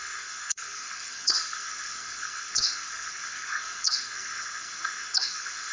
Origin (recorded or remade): remade